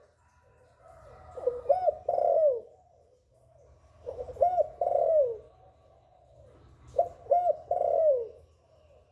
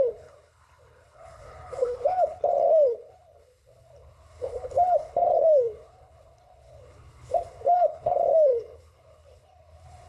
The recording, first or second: first